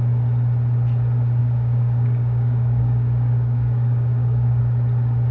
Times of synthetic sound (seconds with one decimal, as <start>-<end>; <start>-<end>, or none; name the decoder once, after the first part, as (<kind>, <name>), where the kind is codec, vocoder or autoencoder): 1.4-4.6 (codec, DAC)